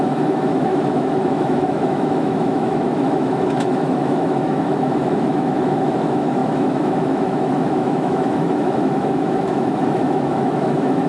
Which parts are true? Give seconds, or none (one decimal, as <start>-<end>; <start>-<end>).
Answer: none